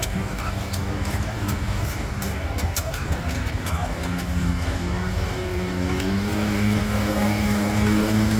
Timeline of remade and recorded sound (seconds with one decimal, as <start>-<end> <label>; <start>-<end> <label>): 0.0-8.4 remade